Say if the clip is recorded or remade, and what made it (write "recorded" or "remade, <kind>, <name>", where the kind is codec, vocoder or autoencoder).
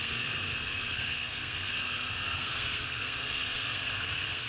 remade, codec, SNAC